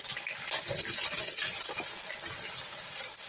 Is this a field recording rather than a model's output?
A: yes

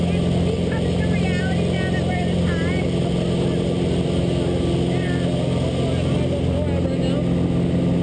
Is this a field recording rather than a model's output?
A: yes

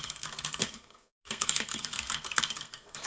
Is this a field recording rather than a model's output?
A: no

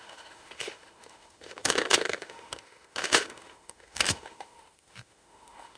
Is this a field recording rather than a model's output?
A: no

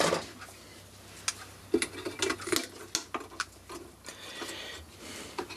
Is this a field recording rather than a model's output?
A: yes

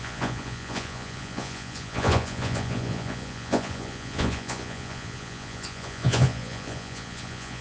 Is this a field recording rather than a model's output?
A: no